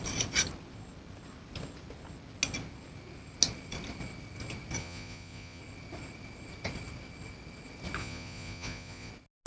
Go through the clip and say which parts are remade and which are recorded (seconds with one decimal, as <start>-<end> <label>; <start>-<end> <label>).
0.0-4.8 recorded; 4.8-5.6 remade; 5.6-8.0 recorded; 8.0-9.1 remade; 9.1-9.5 recorded